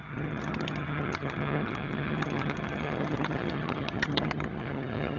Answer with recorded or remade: remade